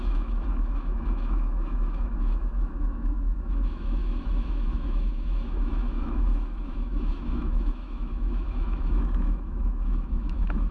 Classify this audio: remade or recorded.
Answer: remade